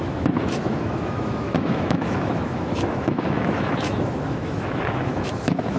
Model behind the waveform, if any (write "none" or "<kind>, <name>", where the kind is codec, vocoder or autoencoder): autoencoder, DAC-VAE